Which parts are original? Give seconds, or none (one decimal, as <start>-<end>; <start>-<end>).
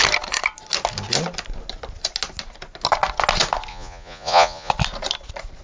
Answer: 0.0-3.7; 4.7-5.6